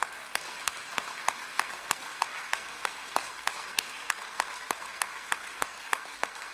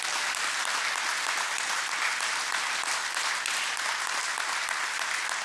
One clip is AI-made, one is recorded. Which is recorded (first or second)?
second